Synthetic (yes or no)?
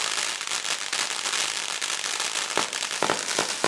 no